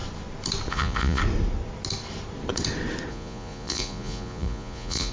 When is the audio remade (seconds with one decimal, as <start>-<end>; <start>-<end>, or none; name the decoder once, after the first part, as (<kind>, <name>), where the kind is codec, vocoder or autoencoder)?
0.7-1.2 (vocoder, Vocos); 3.1-5.1